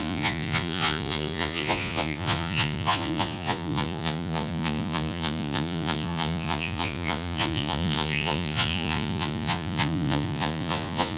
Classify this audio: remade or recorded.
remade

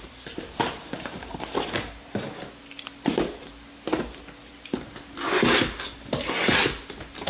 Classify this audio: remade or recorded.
recorded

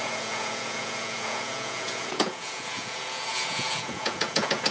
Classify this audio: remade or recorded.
remade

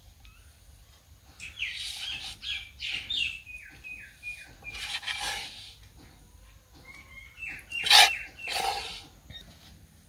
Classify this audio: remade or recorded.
recorded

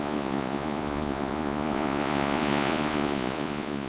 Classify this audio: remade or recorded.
remade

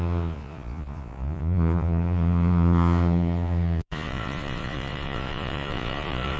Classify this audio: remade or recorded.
remade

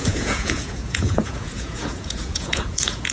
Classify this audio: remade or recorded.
remade